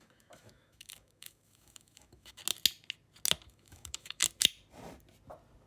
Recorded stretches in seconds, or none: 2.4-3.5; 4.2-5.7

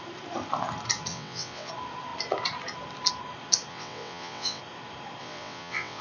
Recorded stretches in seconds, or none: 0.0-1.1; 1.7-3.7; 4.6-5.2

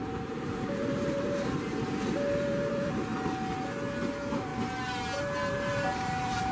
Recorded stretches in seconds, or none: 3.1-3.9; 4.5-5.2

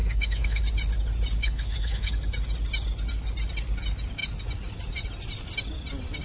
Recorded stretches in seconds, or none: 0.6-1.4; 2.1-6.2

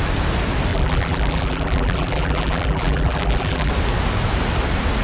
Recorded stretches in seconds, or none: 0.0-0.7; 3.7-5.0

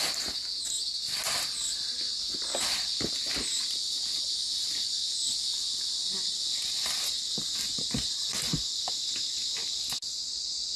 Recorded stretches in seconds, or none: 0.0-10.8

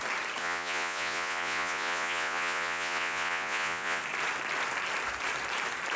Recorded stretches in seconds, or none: 0.0-0.4; 4.0-6.0

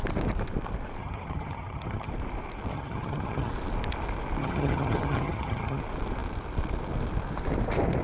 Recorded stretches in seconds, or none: 0.0-1.0; 2.1-2.7; 3.5-4.4; 5.8-8.0